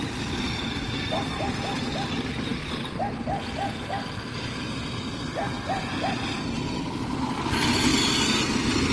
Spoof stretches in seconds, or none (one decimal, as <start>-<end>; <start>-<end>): none